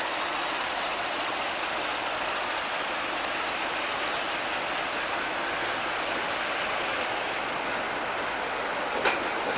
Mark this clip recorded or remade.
recorded